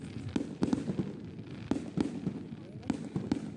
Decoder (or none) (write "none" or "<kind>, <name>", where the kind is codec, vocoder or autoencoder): none